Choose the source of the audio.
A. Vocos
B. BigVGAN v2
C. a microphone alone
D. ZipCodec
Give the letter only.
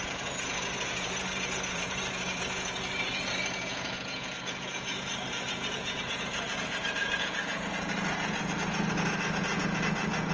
A